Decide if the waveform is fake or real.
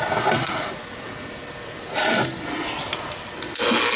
real